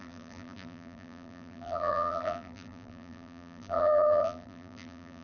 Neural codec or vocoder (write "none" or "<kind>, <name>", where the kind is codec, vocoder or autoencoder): vocoder, BigVGAN v2